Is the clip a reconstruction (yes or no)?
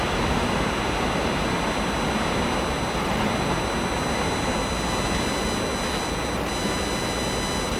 no